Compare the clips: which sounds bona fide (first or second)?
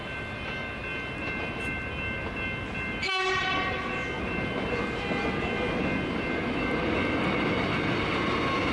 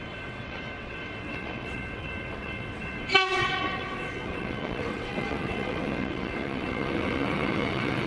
first